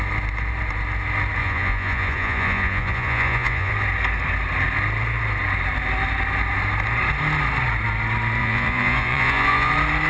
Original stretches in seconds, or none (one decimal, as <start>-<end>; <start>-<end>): 0.0-1.4; 3.7-8.4; 9.7-10.1